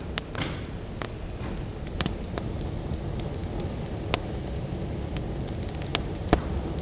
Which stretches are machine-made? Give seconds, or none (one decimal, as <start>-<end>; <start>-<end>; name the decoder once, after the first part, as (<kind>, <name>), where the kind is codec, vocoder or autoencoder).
none

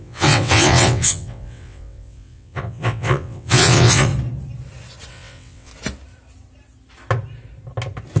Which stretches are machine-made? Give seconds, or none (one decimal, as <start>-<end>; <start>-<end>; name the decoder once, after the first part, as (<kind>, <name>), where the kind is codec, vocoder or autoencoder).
0.0-4.1 (vocoder, WaveNeXt); 5.1-5.7

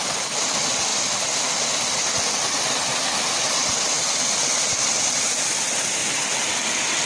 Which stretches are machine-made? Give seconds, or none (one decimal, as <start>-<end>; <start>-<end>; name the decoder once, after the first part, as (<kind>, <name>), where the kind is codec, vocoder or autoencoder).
none

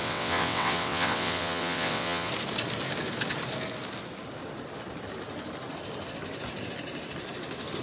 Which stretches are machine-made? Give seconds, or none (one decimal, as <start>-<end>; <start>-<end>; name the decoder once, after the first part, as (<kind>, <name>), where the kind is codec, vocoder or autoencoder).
0.0-2.3 (vocoder, WaveNeXt)